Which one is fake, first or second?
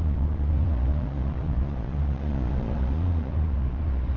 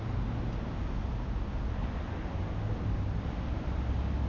first